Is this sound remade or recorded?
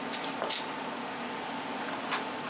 recorded